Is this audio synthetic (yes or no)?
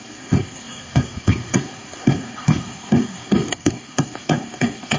yes